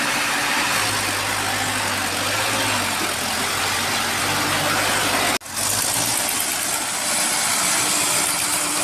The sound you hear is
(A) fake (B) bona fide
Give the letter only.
B